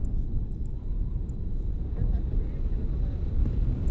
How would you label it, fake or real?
real